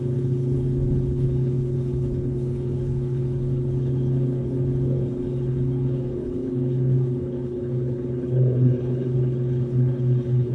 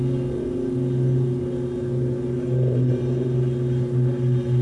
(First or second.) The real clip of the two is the second